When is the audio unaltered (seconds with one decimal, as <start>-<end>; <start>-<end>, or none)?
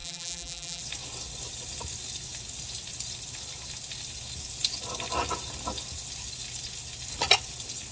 0.8-7.9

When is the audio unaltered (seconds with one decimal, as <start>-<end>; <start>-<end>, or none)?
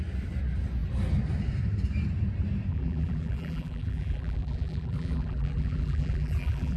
0.0-2.7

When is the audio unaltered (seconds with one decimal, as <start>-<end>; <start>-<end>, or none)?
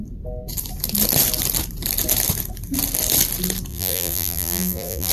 0.0-3.7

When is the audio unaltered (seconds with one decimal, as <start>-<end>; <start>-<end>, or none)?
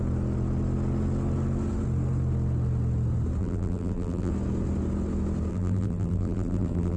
0.0-3.4; 4.3-5.5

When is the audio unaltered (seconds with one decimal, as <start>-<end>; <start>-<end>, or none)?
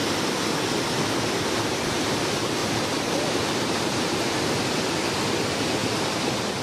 0.0-2.6; 4.2-5.8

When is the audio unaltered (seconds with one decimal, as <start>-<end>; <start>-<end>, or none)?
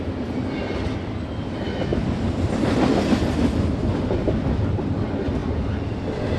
0.0-6.4